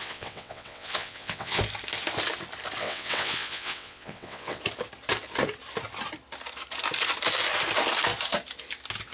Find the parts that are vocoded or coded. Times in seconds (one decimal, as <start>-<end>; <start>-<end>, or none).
0.0-1.6; 2.8-4.6